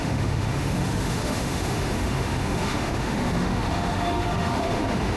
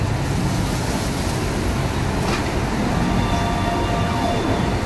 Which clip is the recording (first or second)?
second